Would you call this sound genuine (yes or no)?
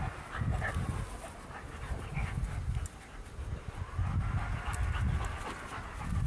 yes